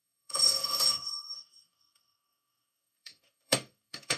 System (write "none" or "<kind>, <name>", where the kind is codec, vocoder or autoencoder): codec, DAC